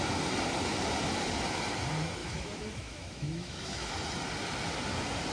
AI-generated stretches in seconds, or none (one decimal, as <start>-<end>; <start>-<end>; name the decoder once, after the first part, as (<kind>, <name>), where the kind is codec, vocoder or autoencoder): 2.2-3.9 (autoencoder, DAC-VAE)